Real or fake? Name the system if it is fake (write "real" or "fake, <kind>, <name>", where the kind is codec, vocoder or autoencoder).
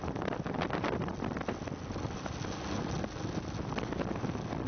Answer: real